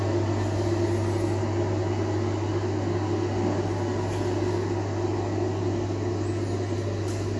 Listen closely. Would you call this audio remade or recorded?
recorded